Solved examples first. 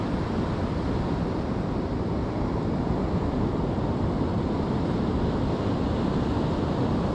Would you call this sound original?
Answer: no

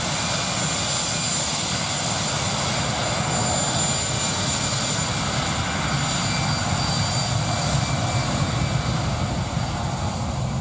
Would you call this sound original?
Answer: yes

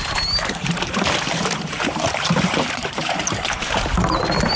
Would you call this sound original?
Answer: no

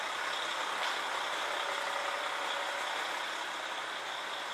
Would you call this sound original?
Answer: yes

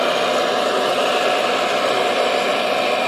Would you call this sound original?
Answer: yes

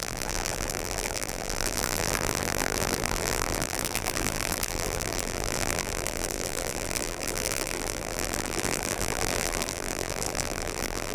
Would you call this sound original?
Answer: no